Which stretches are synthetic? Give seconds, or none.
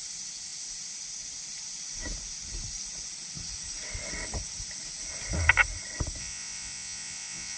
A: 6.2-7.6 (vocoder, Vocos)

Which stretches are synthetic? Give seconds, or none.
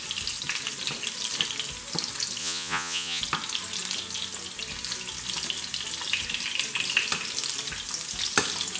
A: 2.4-3.2 (vocoder, Vocos)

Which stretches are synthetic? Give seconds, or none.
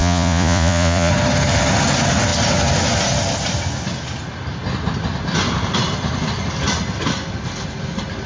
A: 0.0-1.1 (vocoder, Vocos)